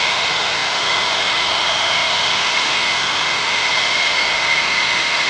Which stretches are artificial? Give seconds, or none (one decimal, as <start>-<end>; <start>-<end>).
0.0-5.3